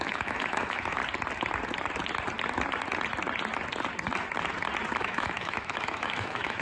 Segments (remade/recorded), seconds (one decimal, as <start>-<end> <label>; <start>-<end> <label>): 0.0-1.0 remade; 1.0-5.0 recorded; 5.0-6.6 remade